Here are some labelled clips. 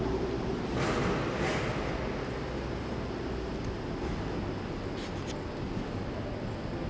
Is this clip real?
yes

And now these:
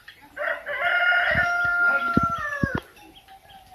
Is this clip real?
yes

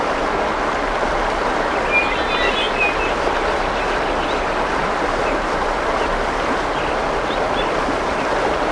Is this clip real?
yes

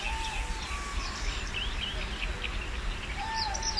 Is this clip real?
yes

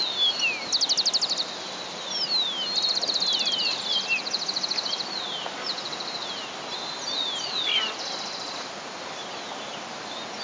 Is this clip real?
yes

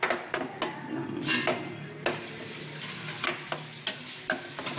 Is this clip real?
yes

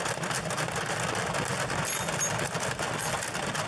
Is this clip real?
yes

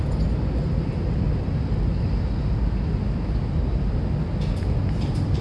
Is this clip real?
yes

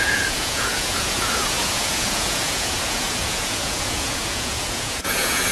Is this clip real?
no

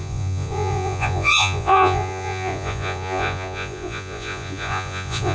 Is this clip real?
no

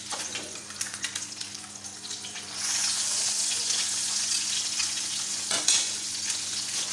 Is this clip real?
no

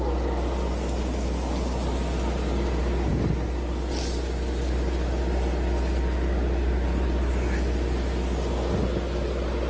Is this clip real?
yes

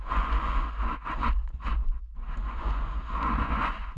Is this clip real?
no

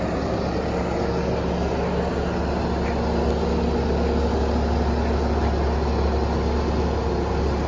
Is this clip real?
yes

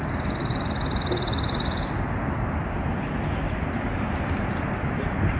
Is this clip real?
yes